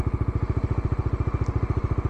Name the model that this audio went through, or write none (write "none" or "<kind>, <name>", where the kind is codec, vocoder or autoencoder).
none